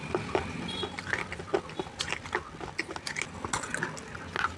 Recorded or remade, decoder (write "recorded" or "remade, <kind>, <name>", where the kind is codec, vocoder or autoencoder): recorded